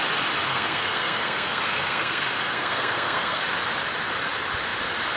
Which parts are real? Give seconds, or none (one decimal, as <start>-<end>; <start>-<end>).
0.0-0.5; 3.4-5.2